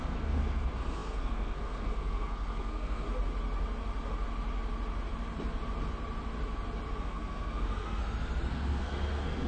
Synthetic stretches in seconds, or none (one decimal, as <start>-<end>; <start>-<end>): 0.0-3.1; 7.0-8.0; 8.5-9.5